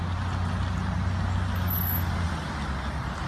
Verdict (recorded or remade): recorded